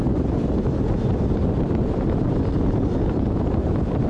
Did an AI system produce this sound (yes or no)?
yes